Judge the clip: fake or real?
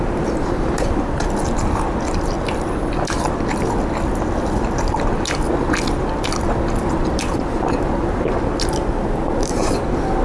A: real